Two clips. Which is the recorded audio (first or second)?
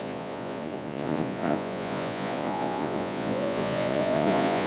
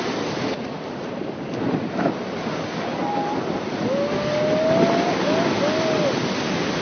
second